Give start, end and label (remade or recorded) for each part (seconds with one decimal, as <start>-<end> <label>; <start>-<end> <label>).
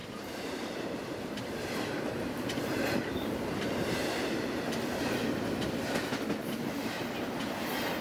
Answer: 0.0-4.7 remade; 4.7-6.4 recorded; 6.4-7.0 remade; 7.0-8.0 recorded